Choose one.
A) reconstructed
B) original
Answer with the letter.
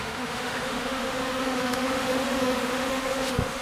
A